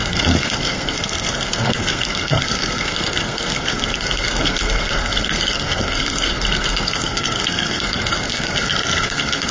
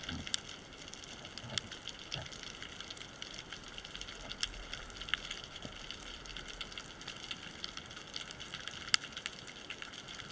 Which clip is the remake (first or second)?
first